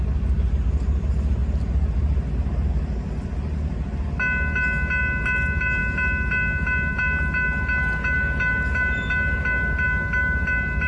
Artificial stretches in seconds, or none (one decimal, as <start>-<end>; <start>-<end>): none